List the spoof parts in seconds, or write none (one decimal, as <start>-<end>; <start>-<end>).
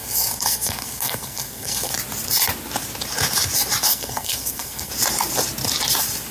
0.0-1.9; 3.9-4.9